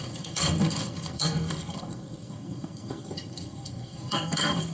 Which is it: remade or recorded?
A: remade